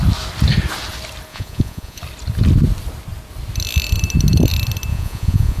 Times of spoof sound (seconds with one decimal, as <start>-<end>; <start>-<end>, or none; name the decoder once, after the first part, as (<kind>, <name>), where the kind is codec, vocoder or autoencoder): 1.3-2.0 (vocoder, Vocos); 4.9-5.6